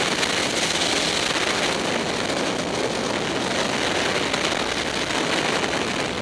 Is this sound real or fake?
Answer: real